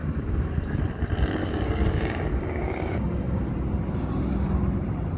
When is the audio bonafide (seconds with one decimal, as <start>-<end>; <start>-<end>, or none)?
0.8-1.4; 3.5-5.2